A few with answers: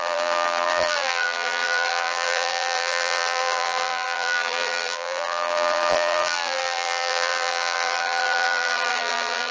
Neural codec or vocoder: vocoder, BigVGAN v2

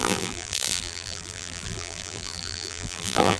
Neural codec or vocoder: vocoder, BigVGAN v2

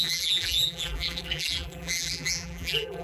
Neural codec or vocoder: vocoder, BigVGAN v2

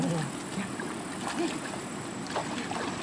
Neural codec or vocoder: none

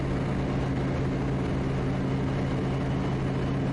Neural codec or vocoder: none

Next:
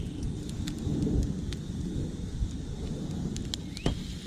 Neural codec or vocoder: none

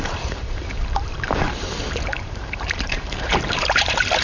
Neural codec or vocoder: vocoder, BigVGAN v2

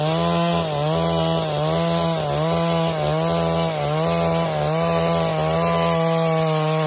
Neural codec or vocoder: none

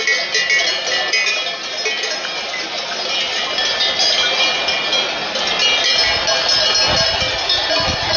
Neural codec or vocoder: none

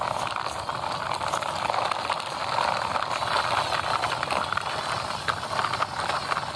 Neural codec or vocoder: none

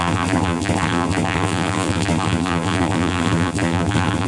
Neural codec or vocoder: vocoder, BigVGAN v2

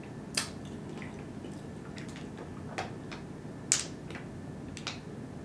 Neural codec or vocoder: none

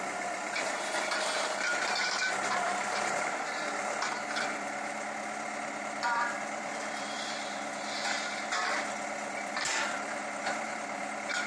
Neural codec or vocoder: vocoder, BigVGAN v2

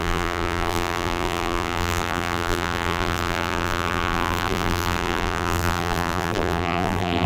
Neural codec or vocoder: vocoder, BigVGAN v2